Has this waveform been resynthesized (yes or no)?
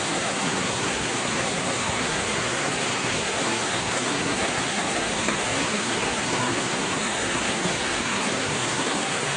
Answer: yes